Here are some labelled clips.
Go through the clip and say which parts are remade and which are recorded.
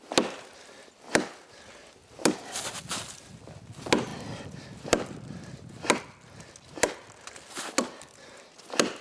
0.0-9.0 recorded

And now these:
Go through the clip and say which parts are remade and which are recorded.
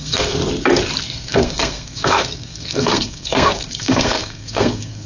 0.0-0.4 remade; 0.4-1.0 recorded; 1.0-5.1 remade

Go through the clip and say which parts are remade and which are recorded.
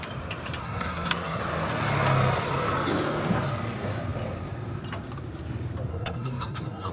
0.0-0.6 recorded; 0.6-1.4 remade; 1.4-5.9 recorded; 5.9-6.9 remade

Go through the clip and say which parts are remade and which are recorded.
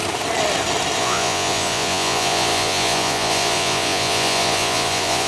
0.0-1.0 recorded; 1.0-5.3 remade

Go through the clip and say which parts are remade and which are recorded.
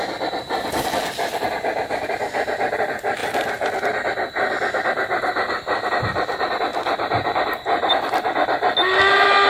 0.0-3.2 recorded; 3.2-3.7 remade; 3.7-6.7 recorded; 6.7-7.9 remade; 7.9-9.5 recorded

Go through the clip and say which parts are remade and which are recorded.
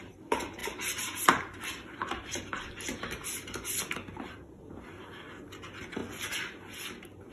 0.0-7.3 recorded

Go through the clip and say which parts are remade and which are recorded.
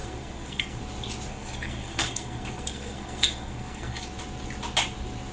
0.0-0.8 remade; 0.8-1.3 recorded; 1.3-4.1 remade; 4.1-5.3 recorded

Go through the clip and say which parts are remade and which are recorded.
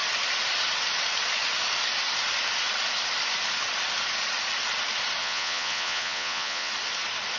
0.0-5.2 recorded; 5.2-6.7 remade; 6.7-7.4 recorded